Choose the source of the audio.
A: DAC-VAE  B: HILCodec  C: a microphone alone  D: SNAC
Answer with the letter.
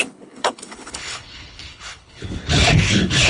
B